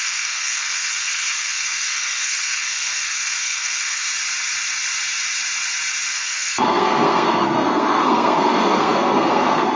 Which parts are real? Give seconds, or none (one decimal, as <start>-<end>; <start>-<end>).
4.1-6.1